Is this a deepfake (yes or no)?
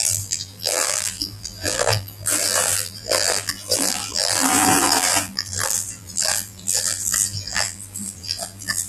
yes